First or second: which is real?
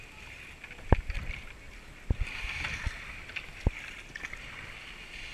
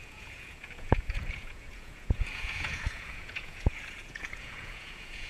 first